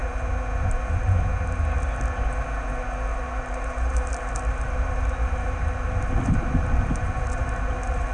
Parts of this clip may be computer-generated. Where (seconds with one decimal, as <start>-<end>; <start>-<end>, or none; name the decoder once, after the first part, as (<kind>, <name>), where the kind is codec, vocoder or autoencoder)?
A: 3.1-8.1 (vocoder, BigVGAN v2)